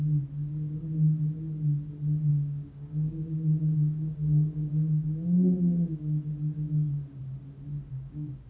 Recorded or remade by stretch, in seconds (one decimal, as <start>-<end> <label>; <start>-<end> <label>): 0.0-2.3 recorded; 2.3-7.2 remade; 7.2-7.9 recorded; 7.9-8.5 remade